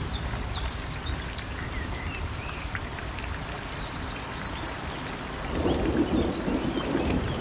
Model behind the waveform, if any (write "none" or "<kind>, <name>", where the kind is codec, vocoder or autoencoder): none